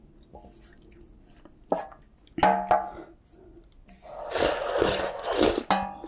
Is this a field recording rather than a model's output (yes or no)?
yes